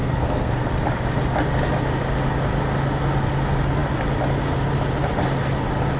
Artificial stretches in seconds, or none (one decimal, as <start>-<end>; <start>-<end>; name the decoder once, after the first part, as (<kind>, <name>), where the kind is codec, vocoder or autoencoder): 0.0-0.5 (codec, SNAC)